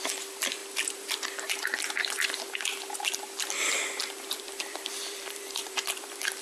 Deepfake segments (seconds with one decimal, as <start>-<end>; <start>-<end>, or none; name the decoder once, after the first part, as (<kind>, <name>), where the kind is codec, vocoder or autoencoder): 0.0-0.6 (vocoder, BigVGAN v2); 4.4-6.4